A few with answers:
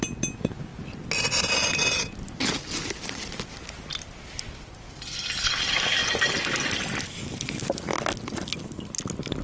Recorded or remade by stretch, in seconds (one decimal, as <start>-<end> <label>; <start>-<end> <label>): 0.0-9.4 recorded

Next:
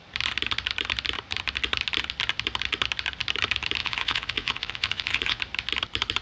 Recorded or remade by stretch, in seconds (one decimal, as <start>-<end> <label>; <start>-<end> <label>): 0.0-3.8 recorded; 3.8-5.4 remade; 5.4-6.2 recorded

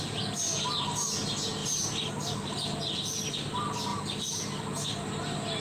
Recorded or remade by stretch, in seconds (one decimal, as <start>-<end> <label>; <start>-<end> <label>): 0.0-1.6 recorded; 1.6-2.1 remade; 2.1-5.6 recorded

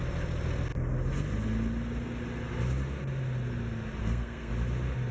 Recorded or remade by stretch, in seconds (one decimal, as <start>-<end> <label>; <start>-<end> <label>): 0.0-4.0 recorded; 4.0-4.5 remade; 4.5-5.1 recorded